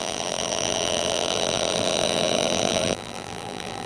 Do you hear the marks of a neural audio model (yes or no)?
yes